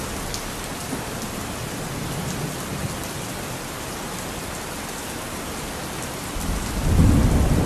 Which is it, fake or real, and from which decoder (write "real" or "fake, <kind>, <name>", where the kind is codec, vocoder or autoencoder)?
real